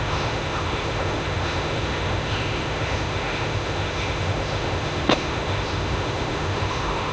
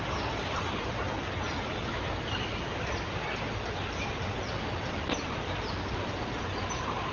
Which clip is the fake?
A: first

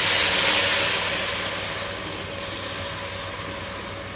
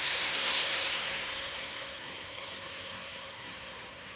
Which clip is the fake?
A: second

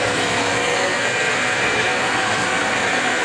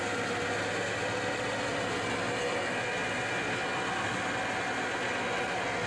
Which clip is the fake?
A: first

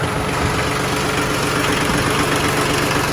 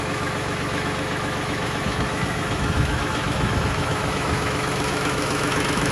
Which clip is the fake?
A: second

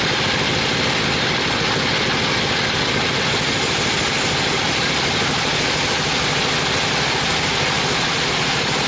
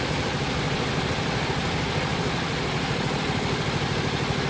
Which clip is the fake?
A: second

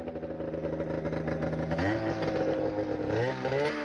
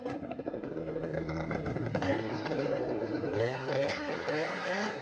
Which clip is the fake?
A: second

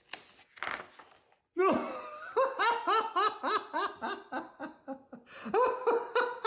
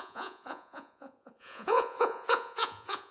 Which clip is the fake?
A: second